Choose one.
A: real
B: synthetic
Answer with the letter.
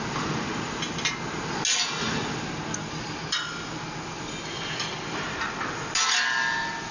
A